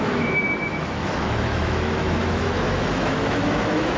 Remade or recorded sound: remade